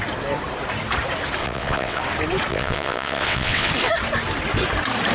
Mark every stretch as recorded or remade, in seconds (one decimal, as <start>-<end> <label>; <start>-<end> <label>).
0.0-1.4 recorded; 1.4-2.0 remade; 2.0-2.5 recorded; 2.5-3.7 remade; 3.7-5.1 recorded